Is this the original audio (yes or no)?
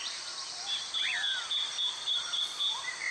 no